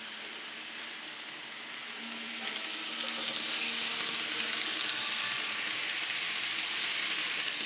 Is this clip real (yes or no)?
yes